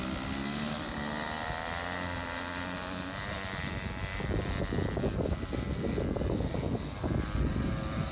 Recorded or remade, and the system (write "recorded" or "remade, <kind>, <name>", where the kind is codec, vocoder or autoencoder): recorded